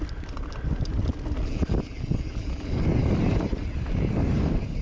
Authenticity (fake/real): real